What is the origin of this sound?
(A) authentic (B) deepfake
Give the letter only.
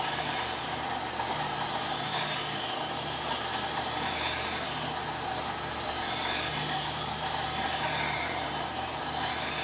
B